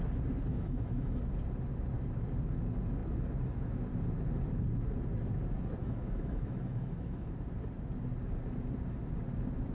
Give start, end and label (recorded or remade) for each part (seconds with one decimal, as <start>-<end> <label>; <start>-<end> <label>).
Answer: 0.0-0.5 recorded; 0.5-1.2 remade; 1.2-5.8 recorded; 5.8-7.3 remade; 7.3-9.7 recorded